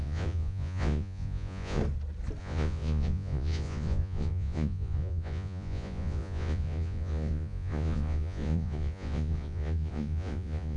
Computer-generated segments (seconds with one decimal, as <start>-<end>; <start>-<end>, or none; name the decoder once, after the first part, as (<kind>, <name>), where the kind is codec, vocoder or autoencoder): 0.0-1.8 (vocoder, Vocos); 2.4-10.8